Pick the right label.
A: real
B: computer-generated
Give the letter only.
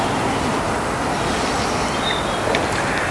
A